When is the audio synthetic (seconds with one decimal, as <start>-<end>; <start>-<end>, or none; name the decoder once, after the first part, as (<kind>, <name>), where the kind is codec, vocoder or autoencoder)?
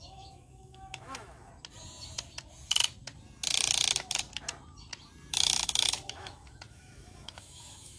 0.0-1.5 (autoencoder, DAC-VAE); 5.3-8.0